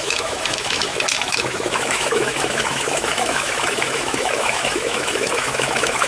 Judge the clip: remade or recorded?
remade